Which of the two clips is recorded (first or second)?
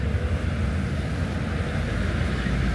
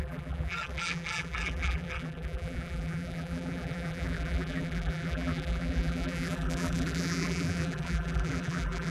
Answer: first